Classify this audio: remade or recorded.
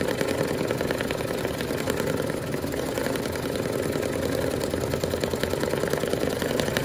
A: recorded